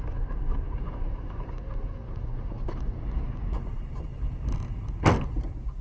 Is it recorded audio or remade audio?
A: recorded